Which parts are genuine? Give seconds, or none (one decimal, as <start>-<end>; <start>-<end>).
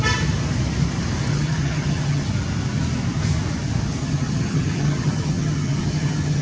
0.0-1.3; 2.3-4.0